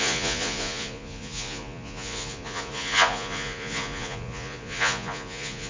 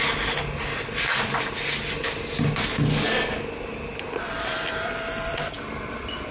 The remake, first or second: first